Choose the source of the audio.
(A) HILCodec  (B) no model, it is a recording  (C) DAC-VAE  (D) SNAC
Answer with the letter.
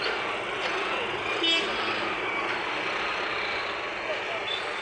B